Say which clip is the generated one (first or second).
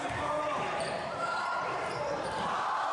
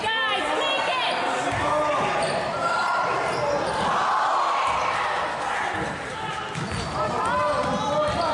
first